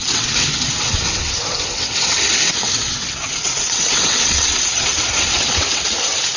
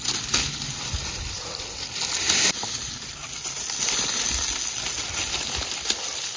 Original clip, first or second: second